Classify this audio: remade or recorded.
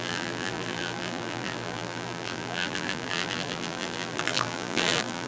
remade